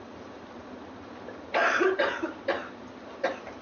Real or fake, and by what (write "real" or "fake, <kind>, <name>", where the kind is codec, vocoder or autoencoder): fake, vocoder, BigVGAN v2